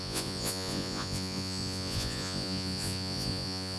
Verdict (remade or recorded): remade